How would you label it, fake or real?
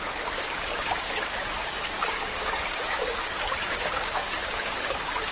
fake